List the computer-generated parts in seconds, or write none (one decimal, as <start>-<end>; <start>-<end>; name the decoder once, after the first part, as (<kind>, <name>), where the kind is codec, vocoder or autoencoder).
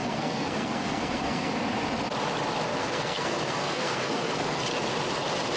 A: 0.0-1.5 (codec, SNAC); 2.8-4.6